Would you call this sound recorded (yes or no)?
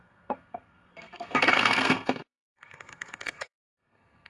no